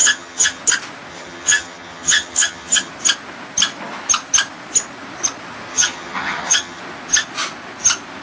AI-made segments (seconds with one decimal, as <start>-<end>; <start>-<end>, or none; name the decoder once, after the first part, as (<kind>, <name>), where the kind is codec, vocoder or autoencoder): 0.0-0.6 (vocoder, HiFi-GAN); 1.1-2.9; 5.7-6.8